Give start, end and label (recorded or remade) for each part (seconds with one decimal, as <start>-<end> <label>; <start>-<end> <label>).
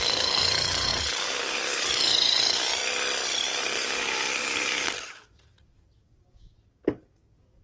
0.0-2.7 remade; 2.7-3.4 recorded; 3.4-7.6 remade